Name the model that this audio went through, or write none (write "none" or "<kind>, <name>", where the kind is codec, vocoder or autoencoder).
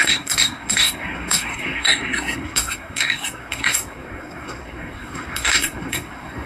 codec, SNAC